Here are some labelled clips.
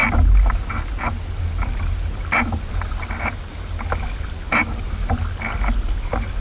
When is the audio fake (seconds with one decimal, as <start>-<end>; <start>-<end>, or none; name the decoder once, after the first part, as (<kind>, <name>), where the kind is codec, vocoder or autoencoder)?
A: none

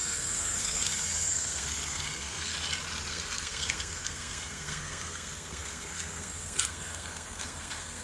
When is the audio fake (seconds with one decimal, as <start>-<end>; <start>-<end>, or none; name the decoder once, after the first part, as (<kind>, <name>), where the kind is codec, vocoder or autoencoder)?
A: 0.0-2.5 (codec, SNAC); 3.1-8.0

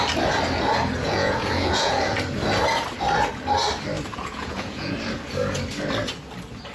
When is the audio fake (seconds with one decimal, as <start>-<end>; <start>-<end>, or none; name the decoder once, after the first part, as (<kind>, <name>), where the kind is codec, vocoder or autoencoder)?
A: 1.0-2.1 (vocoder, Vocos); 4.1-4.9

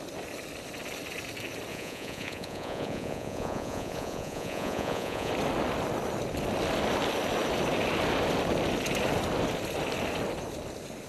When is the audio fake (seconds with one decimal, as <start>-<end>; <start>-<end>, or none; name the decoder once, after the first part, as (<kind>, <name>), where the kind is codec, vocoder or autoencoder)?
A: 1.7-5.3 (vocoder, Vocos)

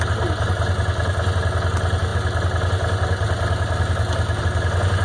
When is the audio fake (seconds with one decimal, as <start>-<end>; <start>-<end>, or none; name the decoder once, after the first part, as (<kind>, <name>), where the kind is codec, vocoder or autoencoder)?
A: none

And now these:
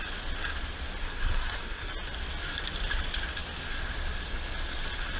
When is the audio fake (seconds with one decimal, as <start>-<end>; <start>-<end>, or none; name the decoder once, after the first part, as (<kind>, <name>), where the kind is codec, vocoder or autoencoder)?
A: 1.0-1.9 (codec, SNAC)

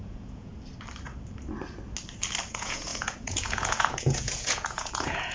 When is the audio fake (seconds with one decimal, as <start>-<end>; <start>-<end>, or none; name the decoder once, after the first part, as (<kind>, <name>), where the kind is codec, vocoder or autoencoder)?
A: 0.0-0.5 (vocoder, Vocos); 2.5-5.3